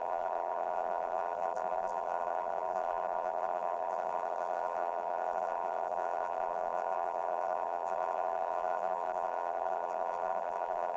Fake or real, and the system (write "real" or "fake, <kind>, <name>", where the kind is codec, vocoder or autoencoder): fake, vocoder, BigVGAN v2